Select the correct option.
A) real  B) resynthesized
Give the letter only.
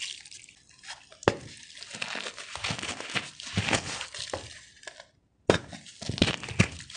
A